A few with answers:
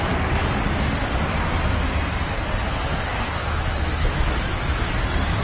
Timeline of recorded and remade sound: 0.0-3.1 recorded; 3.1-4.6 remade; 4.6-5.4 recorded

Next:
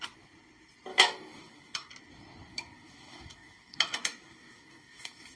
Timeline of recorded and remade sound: 0.0-0.9 recorded; 0.9-1.9 remade; 1.9-2.5 recorded; 2.5-5.4 remade

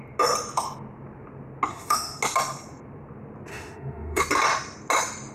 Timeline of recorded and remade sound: 0.0-1.7 recorded; 1.7-2.2 remade; 2.2-3.5 recorded; 3.5-4.2 remade; 4.2-5.3 recorded

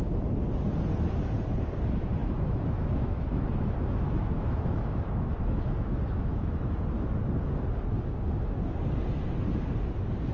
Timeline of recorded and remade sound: 0.0-2.2 recorded; 2.2-6.7 remade; 6.7-10.3 recorded

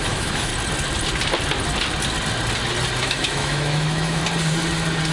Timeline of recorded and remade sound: 0.0-0.5 remade; 0.5-3.0 recorded; 3.0-4.2 remade; 4.2-5.1 recorded